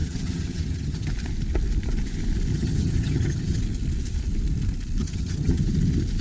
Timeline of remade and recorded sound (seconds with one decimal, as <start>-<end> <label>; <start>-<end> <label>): 0.0-1.1 remade; 1.1-2.5 recorded; 2.5-3.6 remade; 3.6-5.0 recorded; 5.0-5.6 remade; 5.6-6.2 recorded